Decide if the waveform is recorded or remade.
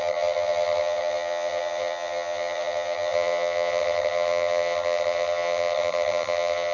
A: remade